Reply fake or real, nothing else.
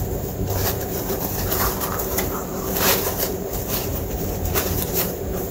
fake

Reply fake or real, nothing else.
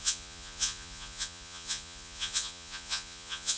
fake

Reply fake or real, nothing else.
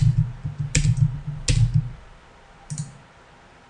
real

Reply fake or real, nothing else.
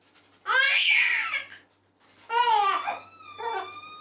real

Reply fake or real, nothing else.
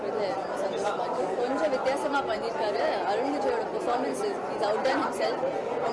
real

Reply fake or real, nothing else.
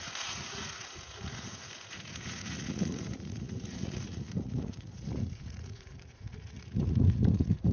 fake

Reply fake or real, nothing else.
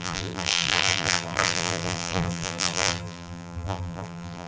fake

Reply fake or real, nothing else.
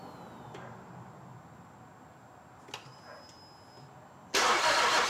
real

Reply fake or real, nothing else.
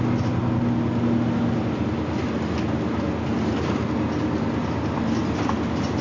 real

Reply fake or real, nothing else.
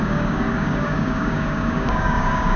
fake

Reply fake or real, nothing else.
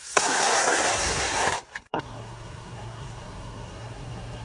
fake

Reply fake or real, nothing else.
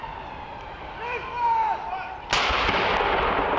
real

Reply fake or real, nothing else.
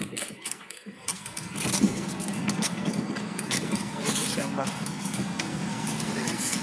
fake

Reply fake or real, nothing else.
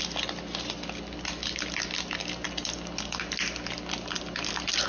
real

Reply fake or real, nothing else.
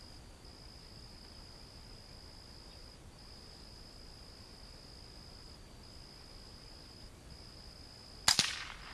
real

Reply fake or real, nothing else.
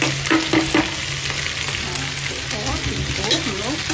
real